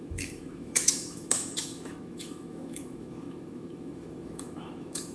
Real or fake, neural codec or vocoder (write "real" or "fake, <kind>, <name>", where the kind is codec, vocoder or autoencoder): fake, autoencoder, DAC-VAE